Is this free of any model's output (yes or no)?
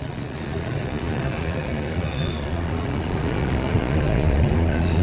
no